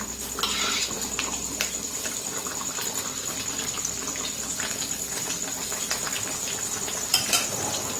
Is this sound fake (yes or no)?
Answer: yes